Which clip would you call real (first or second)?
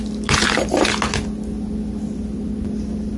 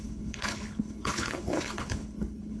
first